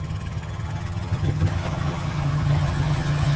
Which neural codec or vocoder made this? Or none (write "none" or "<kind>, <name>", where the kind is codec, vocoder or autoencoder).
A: vocoder, HiFi-GAN